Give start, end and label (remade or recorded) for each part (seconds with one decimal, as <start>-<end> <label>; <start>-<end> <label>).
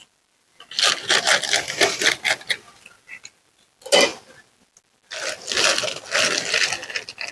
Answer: 0.0-7.3 recorded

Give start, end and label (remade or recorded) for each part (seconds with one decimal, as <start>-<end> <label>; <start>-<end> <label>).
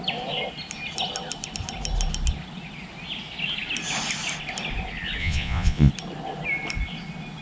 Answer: 0.0-5.2 recorded; 5.2-5.9 remade; 5.9-7.4 recorded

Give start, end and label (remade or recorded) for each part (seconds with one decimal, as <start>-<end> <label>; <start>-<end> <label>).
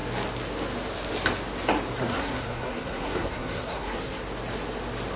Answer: 0.0-2.0 recorded; 2.0-4.2 remade; 4.2-5.2 recorded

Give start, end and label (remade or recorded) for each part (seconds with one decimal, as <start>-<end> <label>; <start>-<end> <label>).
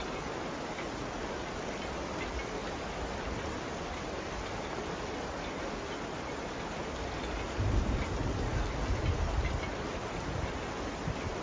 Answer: 0.0-11.4 recorded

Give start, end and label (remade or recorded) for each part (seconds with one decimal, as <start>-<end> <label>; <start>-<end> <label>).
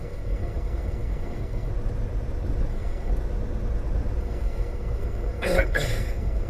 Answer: 0.0-1.7 remade; 1.7-2.7 recorded; 2.7-3.1 remade; 3.1-4.2 recorded; 4.2-6.5 remade